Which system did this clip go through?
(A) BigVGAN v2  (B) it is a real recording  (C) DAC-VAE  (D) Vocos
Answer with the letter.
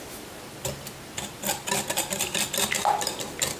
B